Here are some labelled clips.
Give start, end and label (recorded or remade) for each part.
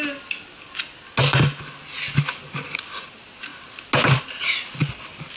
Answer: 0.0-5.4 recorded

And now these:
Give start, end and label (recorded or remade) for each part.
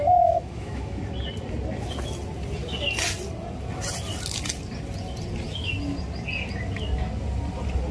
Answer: 0.0-1.0 remade; 1.0-7.9 recorded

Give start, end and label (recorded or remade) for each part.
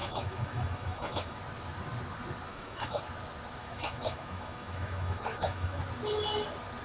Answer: 0.0-1.4 remade; 1.4-2.5 recorded; 2.5-3.0 remade; 3.0-3.6 recorded; 3.6-5.8 remade; 5.8-6.8 recorded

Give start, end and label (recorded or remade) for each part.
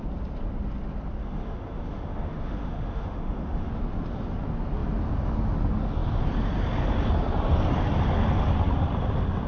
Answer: 0.0-1.2 recorded; 1.2-3.7 remade; 3.7-9.5 recorded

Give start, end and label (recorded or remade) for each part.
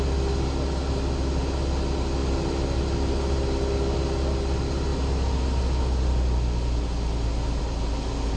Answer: 0.0-8.4 recorded